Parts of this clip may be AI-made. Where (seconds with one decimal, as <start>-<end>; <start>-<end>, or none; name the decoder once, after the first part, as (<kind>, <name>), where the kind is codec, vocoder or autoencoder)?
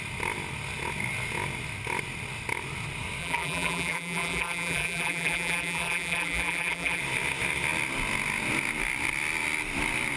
3.2-7.0 (vocoder, BigVGAN v2)